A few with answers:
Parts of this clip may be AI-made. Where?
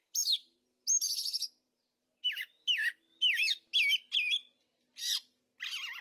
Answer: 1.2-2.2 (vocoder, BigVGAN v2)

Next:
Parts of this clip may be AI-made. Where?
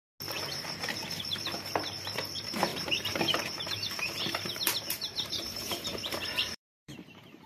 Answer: 2.7-7.5 (vocoder, BigVGAN v2)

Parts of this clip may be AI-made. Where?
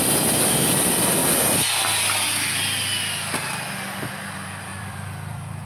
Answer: 0.0-1.2 (vocoder, BigVGAN v2); 4.6-5.7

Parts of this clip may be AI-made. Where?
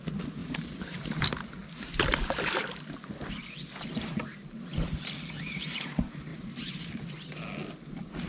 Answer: 0.4-1.2 (vocoder, BigVGAN v2); 6.3-6.9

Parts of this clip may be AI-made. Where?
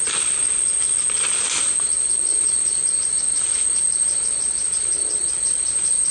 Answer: 2.3-6.1 (vocoder, BigVGAN v2)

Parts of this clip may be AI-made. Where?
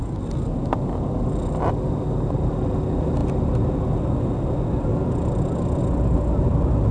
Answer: 3.2-3.9 (vocoder, BigVGAN v2); 4.9-5.8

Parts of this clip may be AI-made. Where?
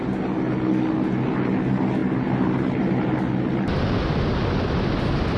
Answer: none